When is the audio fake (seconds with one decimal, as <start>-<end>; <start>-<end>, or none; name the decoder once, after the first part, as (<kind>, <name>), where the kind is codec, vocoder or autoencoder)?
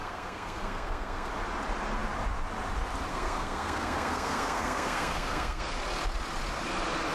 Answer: 0.0-1.3 (codec, SNAC); 3.1-5.7